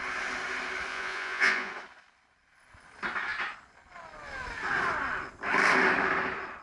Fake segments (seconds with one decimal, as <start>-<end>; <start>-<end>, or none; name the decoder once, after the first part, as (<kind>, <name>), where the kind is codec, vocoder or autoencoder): 0.9-1.7 (vocoder, Vocos)